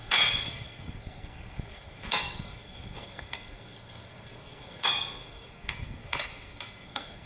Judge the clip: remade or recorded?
remade